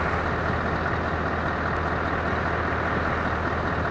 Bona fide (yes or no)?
yes